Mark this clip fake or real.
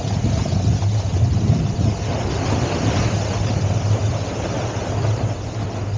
fake